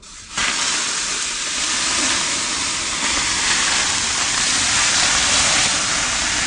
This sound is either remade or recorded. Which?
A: recorded